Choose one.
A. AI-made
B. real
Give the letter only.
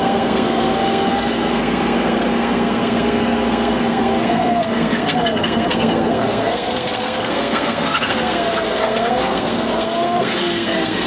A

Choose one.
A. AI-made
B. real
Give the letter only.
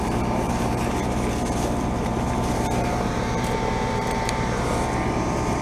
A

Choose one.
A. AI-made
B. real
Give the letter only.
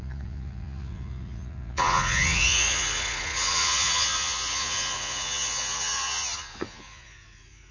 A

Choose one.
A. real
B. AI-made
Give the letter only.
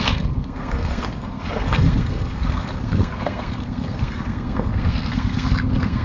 B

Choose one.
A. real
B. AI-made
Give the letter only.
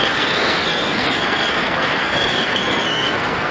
B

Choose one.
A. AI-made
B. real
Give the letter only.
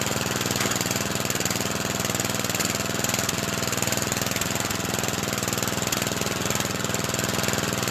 B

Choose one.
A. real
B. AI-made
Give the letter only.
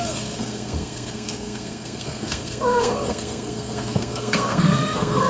B